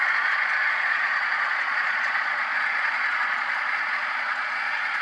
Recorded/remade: remade